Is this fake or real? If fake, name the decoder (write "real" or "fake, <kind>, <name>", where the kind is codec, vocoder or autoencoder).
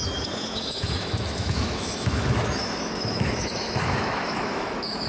fake, autoencoder, DAC-VAE